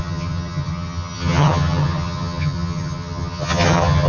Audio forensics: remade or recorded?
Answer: remade